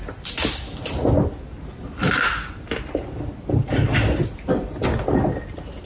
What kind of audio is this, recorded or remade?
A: recorded